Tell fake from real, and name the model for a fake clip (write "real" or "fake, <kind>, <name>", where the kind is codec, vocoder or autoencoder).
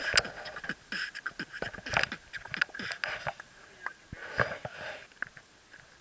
real